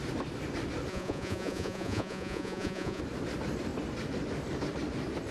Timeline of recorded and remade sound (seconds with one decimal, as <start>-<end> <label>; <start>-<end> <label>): 0.0-0.9 recorded; 0.9-3.0 remade; 3.0-5.3 recorded